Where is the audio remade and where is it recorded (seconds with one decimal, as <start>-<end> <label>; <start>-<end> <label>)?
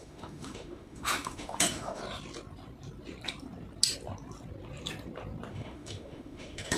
0.0-2.0 remade; 2.0-5.5 recorded; 5.5-6.8 remade